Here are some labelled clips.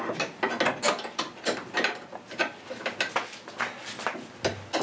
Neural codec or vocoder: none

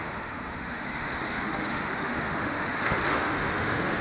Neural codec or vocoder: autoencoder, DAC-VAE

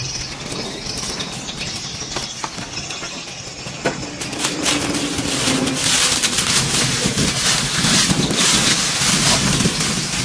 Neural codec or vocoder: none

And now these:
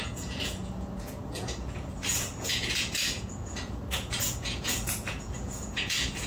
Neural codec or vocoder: vocoder, Vocos